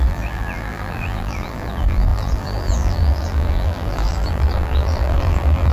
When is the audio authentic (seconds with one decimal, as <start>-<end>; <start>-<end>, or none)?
none